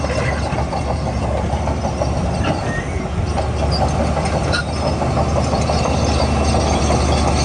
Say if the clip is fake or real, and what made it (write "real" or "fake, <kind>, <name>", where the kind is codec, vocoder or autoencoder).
real